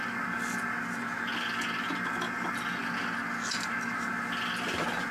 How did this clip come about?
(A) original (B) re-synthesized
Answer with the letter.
A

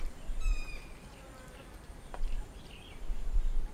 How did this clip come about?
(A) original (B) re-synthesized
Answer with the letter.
B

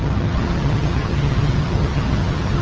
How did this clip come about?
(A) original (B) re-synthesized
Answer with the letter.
B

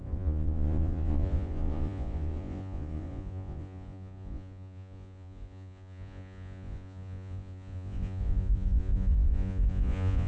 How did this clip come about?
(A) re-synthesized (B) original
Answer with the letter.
A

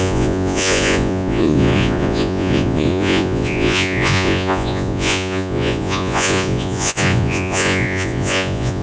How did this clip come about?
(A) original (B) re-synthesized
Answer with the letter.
B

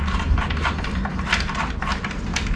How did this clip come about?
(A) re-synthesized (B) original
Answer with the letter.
B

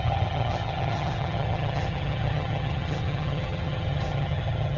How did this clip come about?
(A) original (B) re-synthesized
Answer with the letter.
B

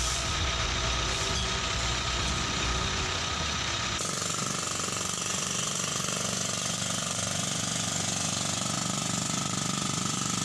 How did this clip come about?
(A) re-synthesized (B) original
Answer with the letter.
A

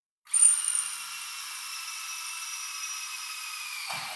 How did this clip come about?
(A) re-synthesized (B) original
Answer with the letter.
B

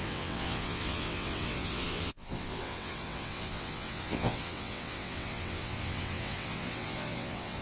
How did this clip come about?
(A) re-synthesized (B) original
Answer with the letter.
A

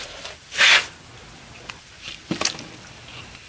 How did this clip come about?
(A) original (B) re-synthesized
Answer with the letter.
B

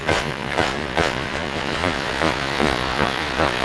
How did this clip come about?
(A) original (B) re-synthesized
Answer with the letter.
B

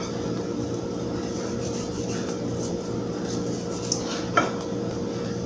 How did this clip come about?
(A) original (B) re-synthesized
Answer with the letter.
A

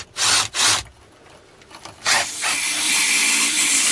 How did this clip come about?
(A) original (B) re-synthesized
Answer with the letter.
A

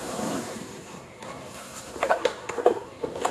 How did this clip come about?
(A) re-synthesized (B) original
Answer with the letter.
A